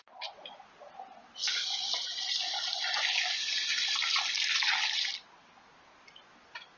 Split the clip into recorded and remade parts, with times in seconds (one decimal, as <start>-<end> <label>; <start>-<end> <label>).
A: 0.0-6.8 recorded